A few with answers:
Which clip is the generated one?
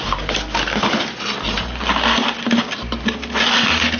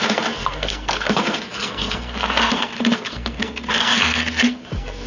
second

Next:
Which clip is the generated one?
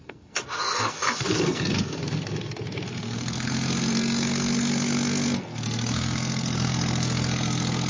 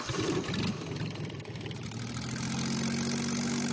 first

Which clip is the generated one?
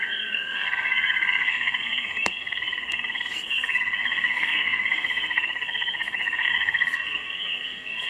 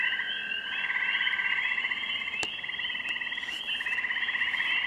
first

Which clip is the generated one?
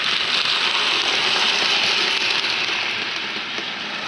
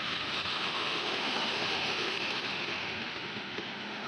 second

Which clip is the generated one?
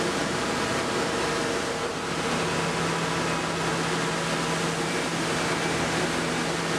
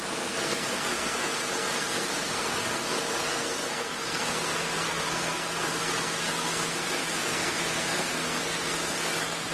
second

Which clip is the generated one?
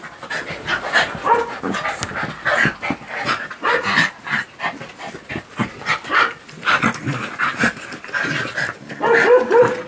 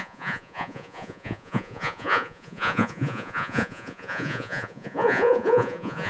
second